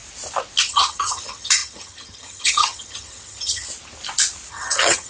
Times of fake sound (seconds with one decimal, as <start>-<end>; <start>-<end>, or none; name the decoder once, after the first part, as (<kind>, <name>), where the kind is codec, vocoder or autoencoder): 0.6-3.7 (vocoder, HiFi-GAN); 4.5-5.1